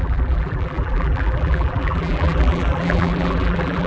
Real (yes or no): no